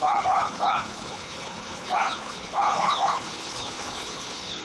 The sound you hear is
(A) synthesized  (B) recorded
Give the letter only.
A